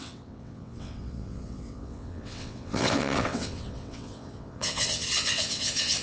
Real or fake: fake